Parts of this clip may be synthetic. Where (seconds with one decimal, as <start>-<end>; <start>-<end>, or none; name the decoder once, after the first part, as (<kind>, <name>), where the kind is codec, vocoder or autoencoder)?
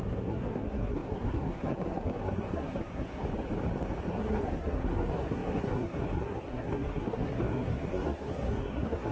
0.0-3.2 (codec, SNAC); 4.1-9.1